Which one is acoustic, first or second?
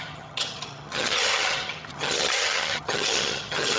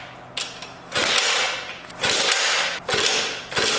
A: second